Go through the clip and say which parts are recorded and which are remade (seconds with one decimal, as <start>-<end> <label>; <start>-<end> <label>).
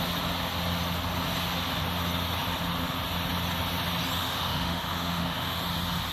0.0-4.2 recorded; 4.2-5.6 remade; 5.6-6.1 recorded